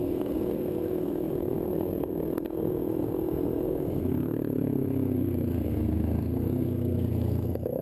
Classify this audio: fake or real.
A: fake